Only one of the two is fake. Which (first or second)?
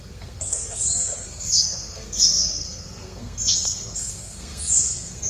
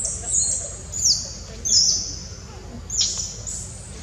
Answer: first